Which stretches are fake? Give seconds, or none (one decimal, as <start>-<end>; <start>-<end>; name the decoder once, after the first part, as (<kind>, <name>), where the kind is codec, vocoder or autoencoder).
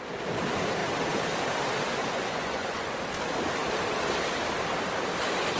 2.0-2.9 (vocoder, Vocos)